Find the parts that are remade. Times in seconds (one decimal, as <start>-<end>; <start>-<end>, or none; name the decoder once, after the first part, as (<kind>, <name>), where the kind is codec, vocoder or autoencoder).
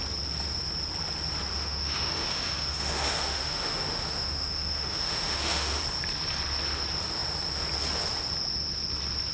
1.5-5.8 (autoencoder, DAC-VAE)